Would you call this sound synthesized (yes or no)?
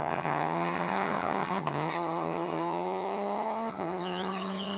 yes